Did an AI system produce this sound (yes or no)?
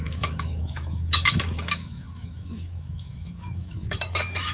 yes